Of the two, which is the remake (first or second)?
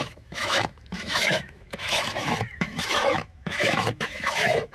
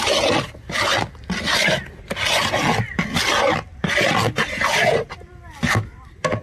first